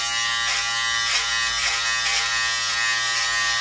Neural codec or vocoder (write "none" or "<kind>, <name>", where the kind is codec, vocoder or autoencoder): none